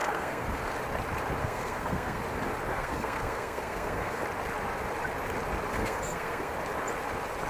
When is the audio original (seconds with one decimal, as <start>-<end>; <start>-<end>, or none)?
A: 0.6-1.4; 2.2-2.7; 4.2-5.7; 6.5-7.5